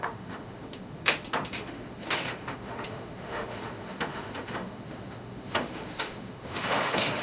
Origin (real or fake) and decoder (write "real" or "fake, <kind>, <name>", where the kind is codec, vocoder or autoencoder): fake, autoencoder, DAC-VAE